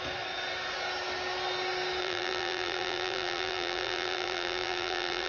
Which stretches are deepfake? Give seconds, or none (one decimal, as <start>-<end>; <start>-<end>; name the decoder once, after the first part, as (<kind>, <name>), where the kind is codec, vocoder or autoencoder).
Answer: 2.0-5.3 (vocoder, BigVGAN v2)